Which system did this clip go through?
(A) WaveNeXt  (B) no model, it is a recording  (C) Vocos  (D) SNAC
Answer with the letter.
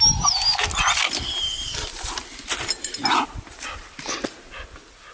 B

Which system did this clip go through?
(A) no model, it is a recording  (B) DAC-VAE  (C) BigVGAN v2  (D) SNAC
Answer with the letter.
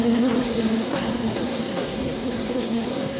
D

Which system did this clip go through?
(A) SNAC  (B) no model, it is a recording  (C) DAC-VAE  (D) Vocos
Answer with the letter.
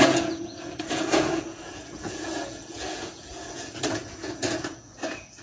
D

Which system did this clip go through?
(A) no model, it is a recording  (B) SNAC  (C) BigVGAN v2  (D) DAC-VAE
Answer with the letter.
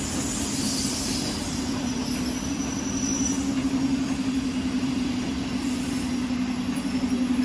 A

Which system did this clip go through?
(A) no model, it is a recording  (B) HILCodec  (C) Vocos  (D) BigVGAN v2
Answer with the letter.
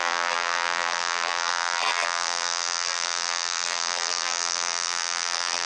D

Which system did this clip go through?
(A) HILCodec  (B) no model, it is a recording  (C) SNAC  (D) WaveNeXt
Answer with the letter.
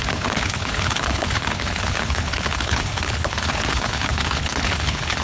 A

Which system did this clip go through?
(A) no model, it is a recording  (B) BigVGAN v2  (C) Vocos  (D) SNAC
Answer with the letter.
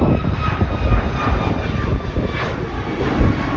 A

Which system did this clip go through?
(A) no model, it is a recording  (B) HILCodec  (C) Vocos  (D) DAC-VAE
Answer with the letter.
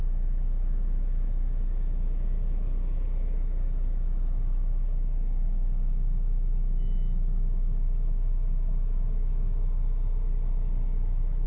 A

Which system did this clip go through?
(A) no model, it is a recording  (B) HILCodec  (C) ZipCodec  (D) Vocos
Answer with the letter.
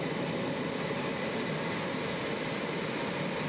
A